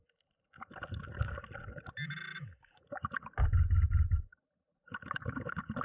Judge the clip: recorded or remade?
recorded